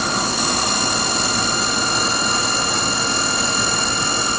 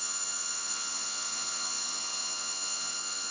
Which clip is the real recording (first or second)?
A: first